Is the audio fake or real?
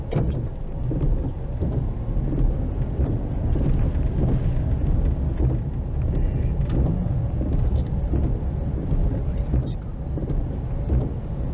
real